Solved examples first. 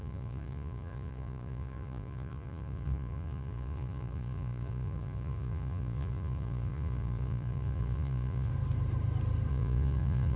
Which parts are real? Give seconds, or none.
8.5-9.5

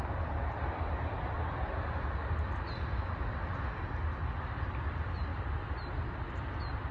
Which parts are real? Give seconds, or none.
0.0-6.9

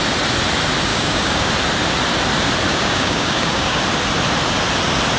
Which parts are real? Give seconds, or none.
0.0-0.9; 1.5-2.7; 3.8-5.2

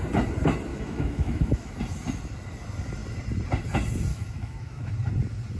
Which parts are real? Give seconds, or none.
0.0-0.7; 1.7-4.1; 4.9-5.6

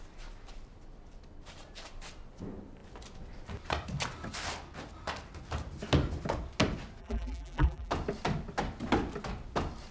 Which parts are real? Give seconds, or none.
0.0-7.0; 7.9-9.9